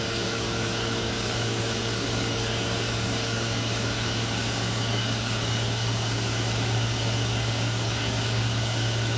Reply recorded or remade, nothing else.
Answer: remade